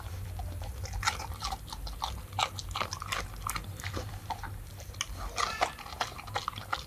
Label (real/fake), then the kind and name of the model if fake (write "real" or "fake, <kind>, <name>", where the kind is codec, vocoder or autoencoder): real